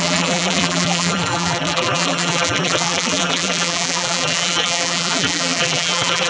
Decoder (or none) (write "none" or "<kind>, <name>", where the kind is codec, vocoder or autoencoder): vocoder, BigVGAN v2